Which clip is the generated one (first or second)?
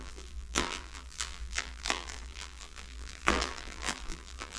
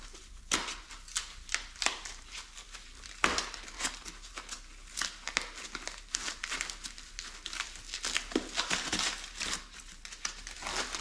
first